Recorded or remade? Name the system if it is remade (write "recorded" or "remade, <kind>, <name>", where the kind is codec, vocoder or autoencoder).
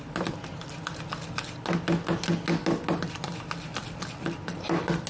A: recorded